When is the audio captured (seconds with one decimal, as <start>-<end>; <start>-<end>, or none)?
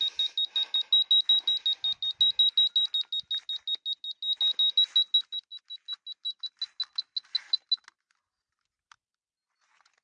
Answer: 0.0-10.0